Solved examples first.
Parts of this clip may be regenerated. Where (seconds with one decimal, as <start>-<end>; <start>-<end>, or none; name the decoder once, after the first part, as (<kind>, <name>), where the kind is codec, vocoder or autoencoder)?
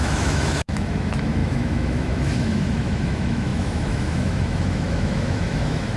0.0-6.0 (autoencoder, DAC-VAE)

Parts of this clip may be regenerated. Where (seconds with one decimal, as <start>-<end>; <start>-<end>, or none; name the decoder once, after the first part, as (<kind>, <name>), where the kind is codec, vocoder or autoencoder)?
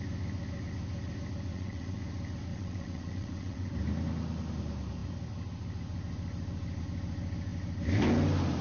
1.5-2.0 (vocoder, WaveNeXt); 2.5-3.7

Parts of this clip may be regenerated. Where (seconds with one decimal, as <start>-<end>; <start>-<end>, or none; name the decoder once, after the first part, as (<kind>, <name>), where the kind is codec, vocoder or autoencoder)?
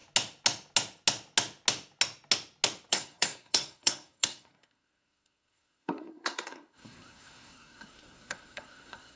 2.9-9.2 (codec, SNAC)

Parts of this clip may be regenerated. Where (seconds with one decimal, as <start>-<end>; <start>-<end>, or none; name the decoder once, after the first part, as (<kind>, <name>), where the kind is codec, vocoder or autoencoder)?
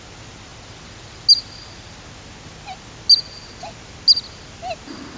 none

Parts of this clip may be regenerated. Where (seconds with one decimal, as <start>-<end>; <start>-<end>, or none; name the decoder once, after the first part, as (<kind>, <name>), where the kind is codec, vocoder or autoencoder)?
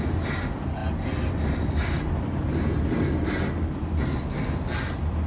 none